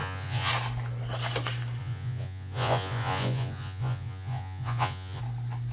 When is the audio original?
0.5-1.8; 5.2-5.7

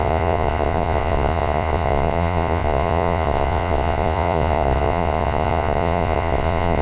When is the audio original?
none

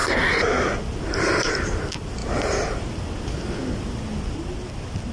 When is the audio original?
0.0-5.1